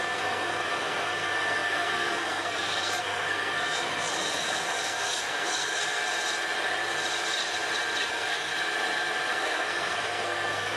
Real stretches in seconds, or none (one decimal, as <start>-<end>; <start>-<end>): 6.0-8.1; 8.5-9.3

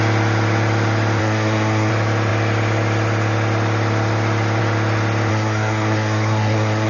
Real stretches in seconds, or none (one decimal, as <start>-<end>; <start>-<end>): 0.0-1.2; 1.9-5.3

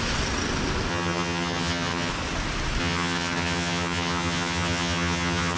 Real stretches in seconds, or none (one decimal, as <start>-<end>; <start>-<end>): 0.0-0.9; 2.1-2.8

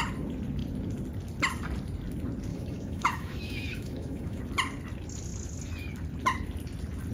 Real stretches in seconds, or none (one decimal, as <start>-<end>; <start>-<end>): 0.0-2.5; 4.4-7.1